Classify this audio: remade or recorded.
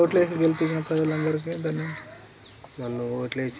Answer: recorded